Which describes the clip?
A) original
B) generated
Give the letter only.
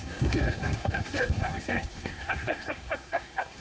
B